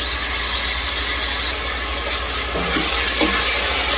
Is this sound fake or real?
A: real